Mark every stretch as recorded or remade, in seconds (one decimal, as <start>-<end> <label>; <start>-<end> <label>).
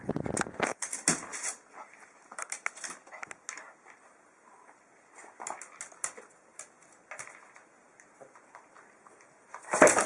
0.0-10.1 recorded